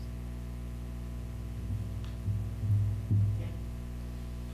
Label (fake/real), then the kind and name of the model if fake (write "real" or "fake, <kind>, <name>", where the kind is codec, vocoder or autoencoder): real